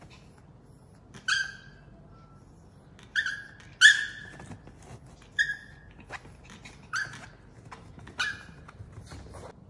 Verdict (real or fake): real